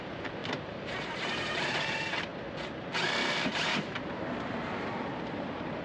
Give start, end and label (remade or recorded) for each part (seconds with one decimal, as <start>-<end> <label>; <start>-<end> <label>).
0.0-2.3 remade; 2.3-3.4 recorded; 3.4-5.8 remade